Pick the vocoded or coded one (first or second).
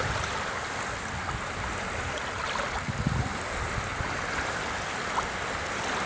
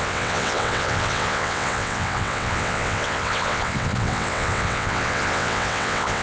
second